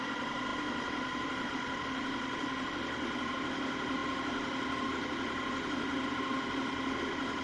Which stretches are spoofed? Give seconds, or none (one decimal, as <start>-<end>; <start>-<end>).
none